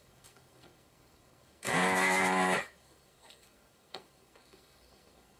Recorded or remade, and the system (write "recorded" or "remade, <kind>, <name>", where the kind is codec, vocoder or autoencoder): remade, codec, SNAC